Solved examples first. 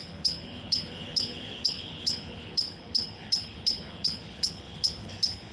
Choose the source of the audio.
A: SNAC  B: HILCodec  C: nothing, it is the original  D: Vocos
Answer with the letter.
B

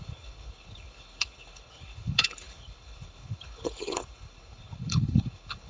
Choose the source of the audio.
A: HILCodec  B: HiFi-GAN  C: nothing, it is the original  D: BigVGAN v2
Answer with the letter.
A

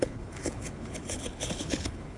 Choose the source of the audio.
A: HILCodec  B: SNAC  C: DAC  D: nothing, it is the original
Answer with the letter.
A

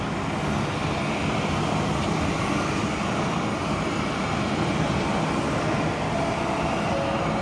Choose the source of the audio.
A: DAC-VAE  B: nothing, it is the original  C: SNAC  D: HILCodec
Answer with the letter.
B